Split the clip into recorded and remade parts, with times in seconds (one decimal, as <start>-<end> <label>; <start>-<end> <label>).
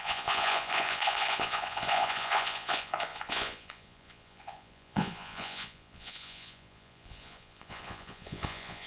0.0-8.9 remade